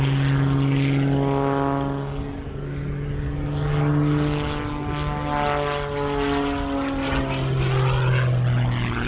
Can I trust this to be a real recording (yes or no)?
yes